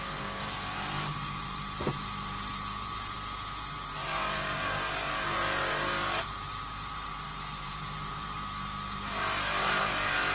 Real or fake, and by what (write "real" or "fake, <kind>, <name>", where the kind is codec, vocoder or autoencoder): fake, vocoder, BigVGAN v2